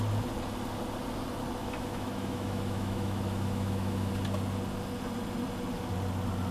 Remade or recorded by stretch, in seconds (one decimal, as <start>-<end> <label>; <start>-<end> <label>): 0.0-1.6 recorded; 1.6-4.1 remade; 4.1-6.5 recorded

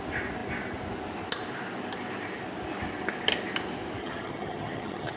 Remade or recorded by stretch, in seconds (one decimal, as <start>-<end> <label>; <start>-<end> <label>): 0.0-4.0 recorded; 4.0-5.2 remade

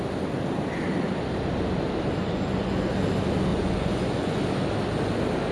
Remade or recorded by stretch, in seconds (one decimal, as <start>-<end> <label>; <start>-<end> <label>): 0.0-2.2 recorded; 2.2-2.9 remade; 2.9-3.5 recorded; 3.5-4.4 remade; 4.4-5.5 recorded

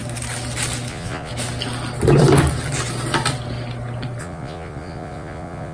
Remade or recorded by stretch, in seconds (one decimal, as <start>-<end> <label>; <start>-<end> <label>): 0.0-0.9 recorded; 0.9-1.3 remade; 1.3-4.2 recorded; 4.2-5.7 remade

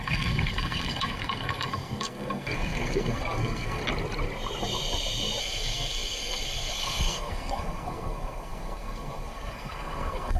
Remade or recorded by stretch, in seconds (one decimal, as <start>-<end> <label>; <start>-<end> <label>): 0.0-3.8 remade; 3.8-5.4 recorded; 5.4-10.4 remade